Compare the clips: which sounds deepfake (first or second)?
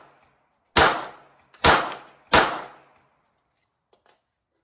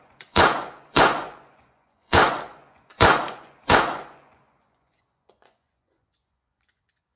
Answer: second